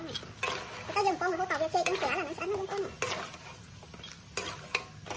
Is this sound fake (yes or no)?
no